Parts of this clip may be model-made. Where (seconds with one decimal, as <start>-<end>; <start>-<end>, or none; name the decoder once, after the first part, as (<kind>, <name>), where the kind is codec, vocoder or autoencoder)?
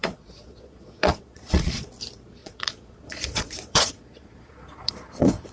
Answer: 0.0-1.9 (vocoder, Vocos); 2.4-5.5